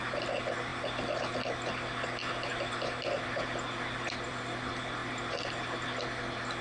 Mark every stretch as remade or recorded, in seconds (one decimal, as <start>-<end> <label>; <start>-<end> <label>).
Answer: 0.0-6.6 recorded